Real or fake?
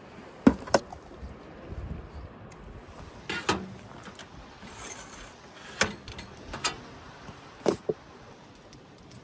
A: real